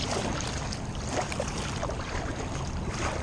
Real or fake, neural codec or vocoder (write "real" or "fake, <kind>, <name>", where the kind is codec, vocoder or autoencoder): real